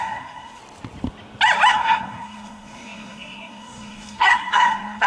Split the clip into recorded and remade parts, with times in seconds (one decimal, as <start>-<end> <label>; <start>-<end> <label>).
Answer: 0.0-0.6 remade; 0.6-1.7 recorded; 1.7-5.1 remade